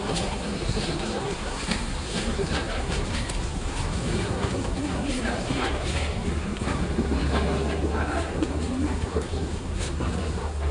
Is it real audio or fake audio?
fake